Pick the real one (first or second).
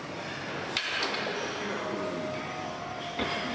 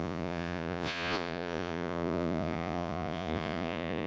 first